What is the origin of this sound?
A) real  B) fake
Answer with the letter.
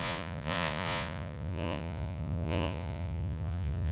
B